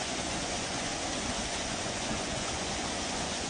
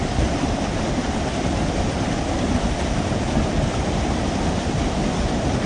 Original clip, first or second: second